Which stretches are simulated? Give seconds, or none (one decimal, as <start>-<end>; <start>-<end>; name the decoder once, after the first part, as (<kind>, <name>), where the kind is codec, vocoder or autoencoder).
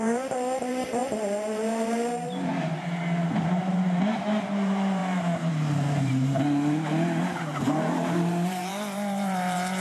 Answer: 0.0-9.8 (vocoder, BigVGAN v2)